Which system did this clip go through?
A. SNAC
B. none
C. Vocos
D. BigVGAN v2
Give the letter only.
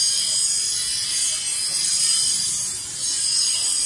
B